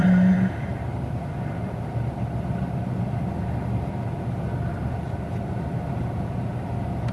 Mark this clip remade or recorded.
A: remade